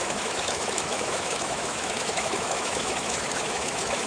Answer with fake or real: fake